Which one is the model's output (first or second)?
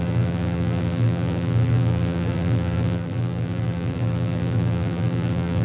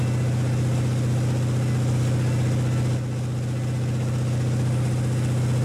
first